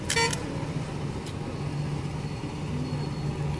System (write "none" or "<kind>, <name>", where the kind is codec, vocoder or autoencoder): none